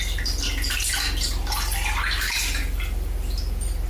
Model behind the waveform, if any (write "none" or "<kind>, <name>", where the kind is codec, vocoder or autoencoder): none